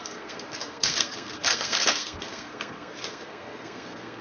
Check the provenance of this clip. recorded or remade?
remade